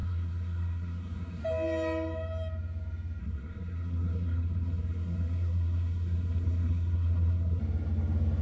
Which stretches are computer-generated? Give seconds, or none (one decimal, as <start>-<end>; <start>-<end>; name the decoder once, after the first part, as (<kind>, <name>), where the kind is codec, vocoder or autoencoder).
0.0-1.4 (codec, SNAC); 3.2-7.6